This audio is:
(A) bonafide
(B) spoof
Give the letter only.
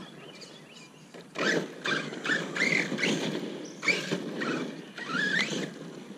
A